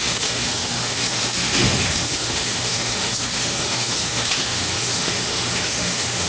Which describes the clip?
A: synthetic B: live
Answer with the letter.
A